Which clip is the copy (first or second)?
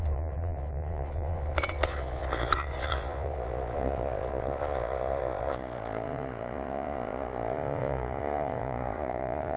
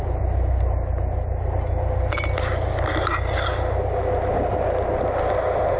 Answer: first